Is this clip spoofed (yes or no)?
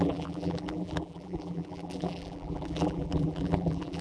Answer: yes